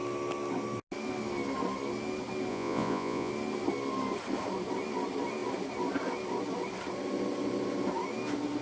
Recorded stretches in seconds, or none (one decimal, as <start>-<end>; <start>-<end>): 0.0-2.5; 3.3-8.6